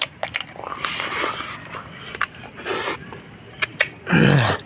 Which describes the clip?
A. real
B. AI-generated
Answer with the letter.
A